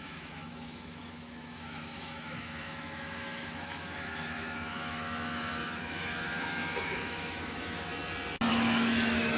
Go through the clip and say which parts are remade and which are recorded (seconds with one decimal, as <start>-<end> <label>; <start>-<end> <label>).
0.0-7.9 remade; 7.9-8.5 recorded; 8.5-9.4 remade